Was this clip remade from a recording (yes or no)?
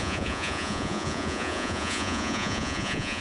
yes